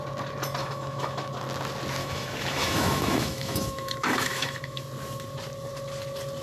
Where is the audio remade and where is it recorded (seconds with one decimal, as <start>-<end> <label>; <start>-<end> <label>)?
0.0-0.6 recorded; 0.6-1.3 remade; 1.3-2.0 recorded; 2.0-4.8 remade; 4.8-6.4 recorded